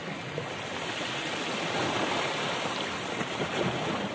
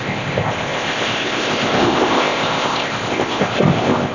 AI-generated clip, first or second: second